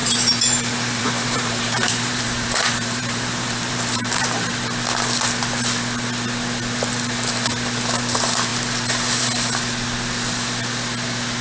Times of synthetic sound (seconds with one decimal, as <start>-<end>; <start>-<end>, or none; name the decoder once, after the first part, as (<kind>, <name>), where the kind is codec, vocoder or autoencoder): 0.0-4.5 (vocoder, BigVGAN v2)